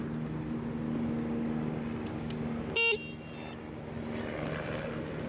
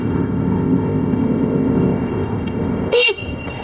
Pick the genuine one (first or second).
first